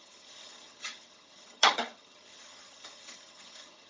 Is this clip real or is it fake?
fake